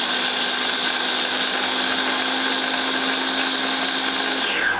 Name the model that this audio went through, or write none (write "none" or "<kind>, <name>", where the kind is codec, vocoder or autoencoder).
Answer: none